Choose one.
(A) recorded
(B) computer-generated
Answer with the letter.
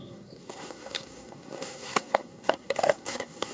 B